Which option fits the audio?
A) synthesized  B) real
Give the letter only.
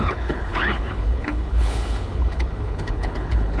A